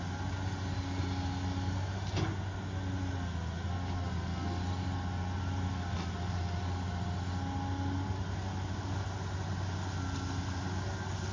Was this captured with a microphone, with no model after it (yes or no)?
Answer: yes